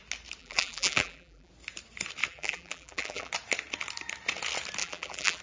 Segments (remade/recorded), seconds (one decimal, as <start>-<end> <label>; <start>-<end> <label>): 0.0-0.4 recorded; 0.4-1.5 remade; 1.5-2.3 recorded; 2.3-3.3 remade; 3.3-4.8 recorded; 4.8-5.4 remade